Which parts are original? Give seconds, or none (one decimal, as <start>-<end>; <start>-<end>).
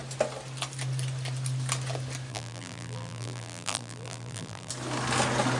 0.0-2.3; 4.7-5.6